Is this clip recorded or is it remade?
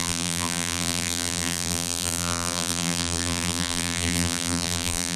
remade